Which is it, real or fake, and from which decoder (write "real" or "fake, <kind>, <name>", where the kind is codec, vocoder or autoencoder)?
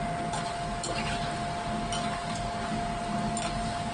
real